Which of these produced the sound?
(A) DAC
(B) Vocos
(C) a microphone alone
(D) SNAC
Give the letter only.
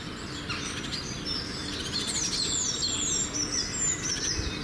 C